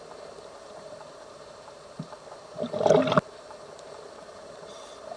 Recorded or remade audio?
remade